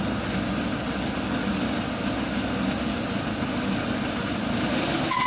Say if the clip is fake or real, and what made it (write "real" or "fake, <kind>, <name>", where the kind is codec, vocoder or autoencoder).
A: real